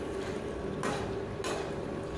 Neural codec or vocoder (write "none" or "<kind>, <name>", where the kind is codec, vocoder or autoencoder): none